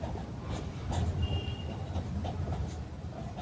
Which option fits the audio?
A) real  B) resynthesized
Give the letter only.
A